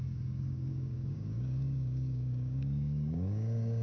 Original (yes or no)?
no